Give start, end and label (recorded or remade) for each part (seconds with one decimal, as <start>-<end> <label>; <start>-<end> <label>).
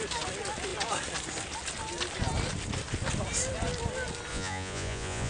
0.0-4.3 recorded; 4.3-5.3 remade